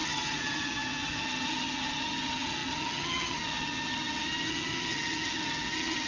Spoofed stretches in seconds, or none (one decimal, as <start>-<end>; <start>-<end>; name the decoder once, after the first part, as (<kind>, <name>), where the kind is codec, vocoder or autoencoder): 0.0-6.1 (vocoder, HiFi-GAN)